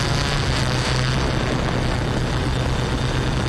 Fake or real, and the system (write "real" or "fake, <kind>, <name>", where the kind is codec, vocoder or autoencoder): real